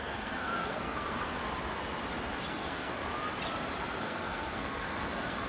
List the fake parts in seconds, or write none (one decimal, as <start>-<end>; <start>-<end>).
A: 0.0-1.4; 2.5-3.0; 4.0-5.5